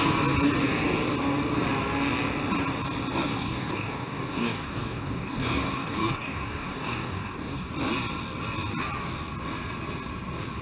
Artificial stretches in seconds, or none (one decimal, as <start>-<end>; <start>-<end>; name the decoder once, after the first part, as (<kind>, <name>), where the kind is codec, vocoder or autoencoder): 3.3-7.7 (codec, DAC)